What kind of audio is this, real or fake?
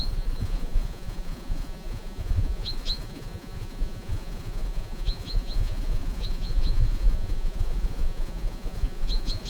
fake